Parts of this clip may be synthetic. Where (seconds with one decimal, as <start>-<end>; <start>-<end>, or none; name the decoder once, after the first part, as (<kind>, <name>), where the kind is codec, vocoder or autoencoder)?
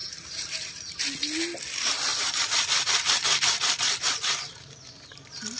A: 0.0-1.0 (vocoder, BigVGAN v2); 2.1-5.6